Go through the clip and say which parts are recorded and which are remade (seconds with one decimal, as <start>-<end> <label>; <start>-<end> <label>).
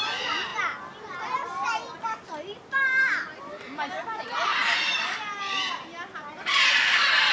0.0-7.3 recorded